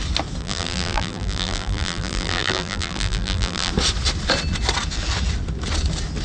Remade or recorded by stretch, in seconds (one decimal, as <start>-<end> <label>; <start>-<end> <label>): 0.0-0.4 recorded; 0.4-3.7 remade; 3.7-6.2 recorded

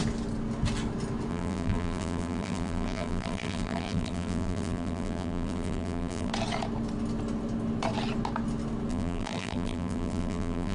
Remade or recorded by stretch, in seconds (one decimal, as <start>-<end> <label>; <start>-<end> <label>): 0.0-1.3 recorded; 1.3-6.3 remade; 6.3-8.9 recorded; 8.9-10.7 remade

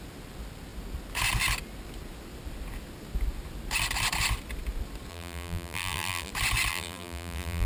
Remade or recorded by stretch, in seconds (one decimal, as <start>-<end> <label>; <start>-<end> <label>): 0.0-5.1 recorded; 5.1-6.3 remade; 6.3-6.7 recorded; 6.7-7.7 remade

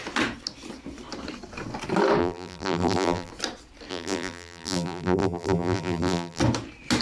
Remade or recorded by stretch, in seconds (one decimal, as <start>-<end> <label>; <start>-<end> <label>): 0.0-2.2 recorded; 2.2-3.3 remade; 3.3-3.9 recorded; 3.9-6.4 remade; 6.4-7.0 recorded

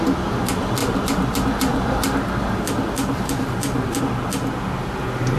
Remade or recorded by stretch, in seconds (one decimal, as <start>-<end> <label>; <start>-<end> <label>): 0.0-0.8 recorded; 0.8-4.0 remade; 4.0-5.4 recorded

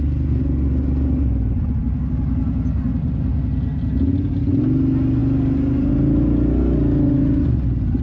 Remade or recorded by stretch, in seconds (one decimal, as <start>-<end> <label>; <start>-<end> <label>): 0.0-8.0 recorded

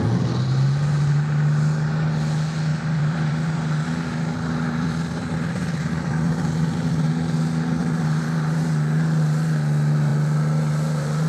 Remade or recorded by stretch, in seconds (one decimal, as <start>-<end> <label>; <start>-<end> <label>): 0.0-2.7 recorded; 2.7-6.9 remade; 6.9-7.8 recorded; 7.8-8.6 remade; 8.6-11.3 recorded

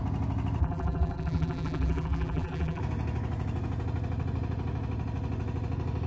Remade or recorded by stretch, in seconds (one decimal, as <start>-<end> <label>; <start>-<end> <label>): 0.0-0.6 recorded; 0.6-2.8 remade; 2.8-6.1 recorded